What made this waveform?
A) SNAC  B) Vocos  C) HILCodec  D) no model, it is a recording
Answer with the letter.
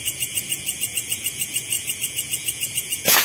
B